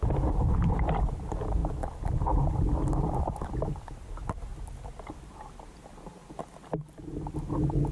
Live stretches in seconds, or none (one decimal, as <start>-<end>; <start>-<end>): 0.0-7.9